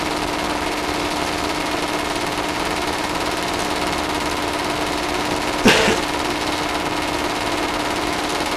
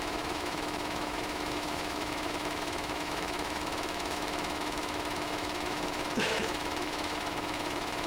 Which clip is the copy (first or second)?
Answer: second